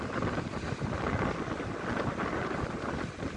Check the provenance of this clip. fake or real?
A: real